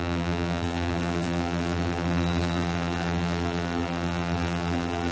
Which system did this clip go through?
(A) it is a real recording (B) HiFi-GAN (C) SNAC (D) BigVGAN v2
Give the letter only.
D